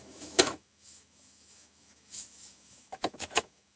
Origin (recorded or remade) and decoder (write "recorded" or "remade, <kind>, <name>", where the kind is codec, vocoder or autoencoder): remade, autoencoder, DAC-VAE